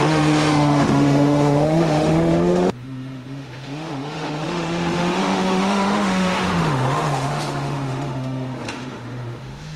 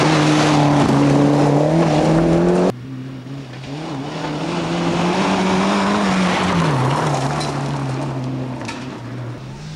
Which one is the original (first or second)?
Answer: second